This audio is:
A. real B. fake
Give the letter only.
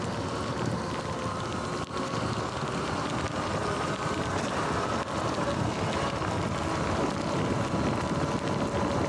A